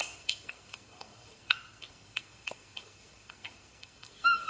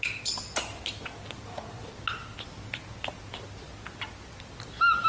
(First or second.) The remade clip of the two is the first